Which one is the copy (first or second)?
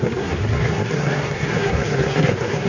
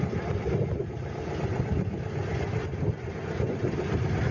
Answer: first